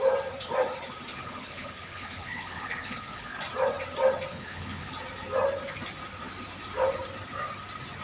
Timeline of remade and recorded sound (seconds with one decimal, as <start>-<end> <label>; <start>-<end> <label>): 0.0-1.1 recorded; 1.1-3.4 remade; 3.4-4.3 recorded; 4.3-4.9 remade; 4.9-8.0 recorded